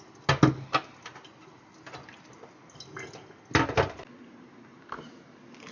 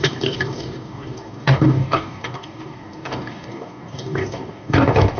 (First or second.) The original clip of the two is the first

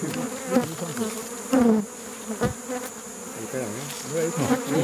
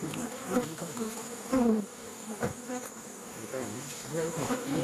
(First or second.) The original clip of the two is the first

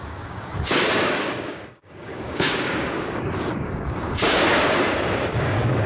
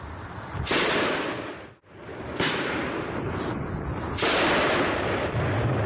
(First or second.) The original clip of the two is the second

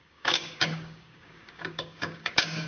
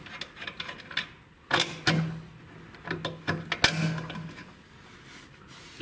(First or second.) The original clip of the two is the second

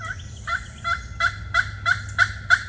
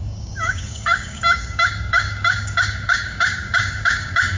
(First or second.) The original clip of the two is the first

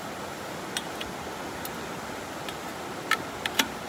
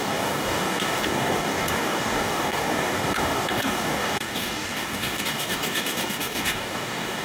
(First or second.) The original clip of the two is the first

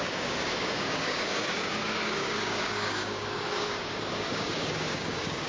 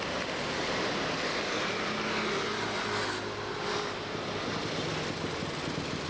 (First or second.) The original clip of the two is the second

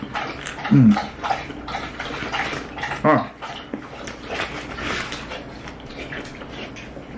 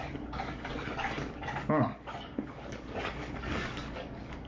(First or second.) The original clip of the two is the first